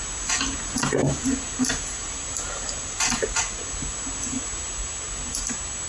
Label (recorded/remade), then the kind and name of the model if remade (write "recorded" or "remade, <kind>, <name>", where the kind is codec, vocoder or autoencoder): recorded